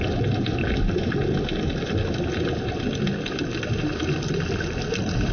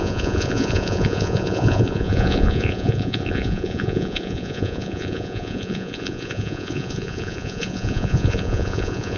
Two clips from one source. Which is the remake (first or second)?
second